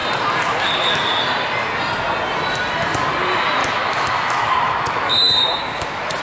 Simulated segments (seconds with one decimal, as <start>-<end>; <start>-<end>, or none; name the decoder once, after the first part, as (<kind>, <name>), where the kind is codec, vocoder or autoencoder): 3.6-6.2 (autoencoder, DAC-VAE)